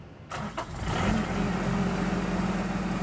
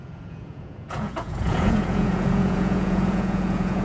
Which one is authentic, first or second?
first